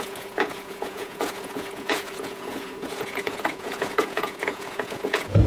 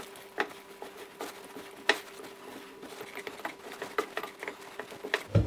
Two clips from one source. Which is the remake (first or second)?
first